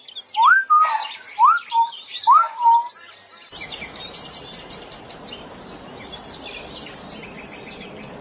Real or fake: real